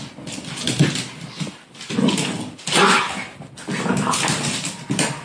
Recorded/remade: recorded